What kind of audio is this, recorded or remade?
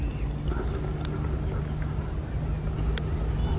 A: recorded